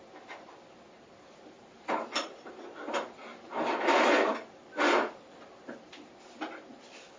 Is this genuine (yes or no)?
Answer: yes